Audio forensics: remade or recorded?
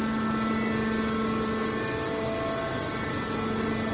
recorded